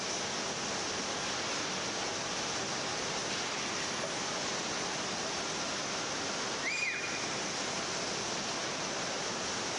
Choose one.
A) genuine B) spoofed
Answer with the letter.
A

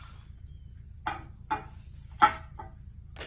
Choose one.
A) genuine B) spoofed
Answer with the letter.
A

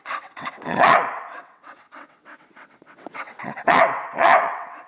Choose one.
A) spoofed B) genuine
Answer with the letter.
A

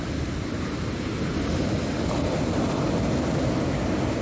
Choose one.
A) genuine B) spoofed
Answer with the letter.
A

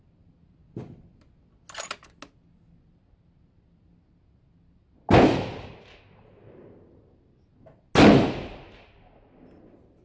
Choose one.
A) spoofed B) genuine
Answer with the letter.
B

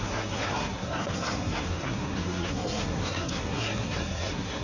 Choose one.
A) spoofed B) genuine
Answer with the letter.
A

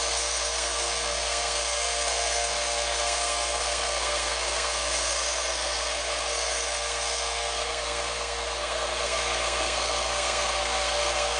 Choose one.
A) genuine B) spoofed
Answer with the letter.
B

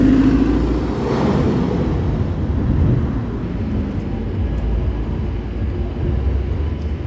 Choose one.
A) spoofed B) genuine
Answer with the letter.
B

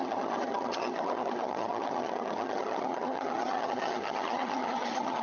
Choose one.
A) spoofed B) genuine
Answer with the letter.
A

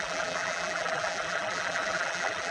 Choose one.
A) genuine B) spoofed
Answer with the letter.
B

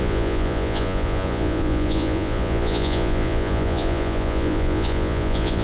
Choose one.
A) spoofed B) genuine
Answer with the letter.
A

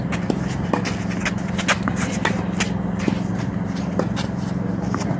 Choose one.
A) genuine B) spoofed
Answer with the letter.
A